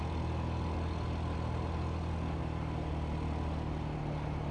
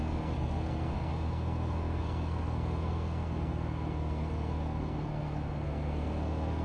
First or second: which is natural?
first